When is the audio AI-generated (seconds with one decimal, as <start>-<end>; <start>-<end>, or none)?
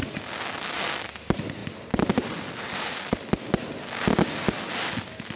none